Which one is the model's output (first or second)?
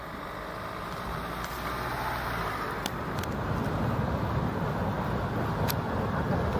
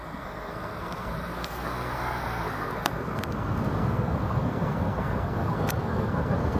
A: second